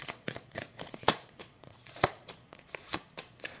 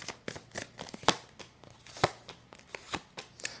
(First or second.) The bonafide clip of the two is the second